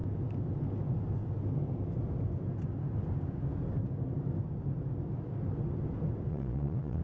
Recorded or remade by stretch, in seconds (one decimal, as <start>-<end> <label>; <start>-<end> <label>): 0.0-6.3 recorded; 6.3-7.0 remade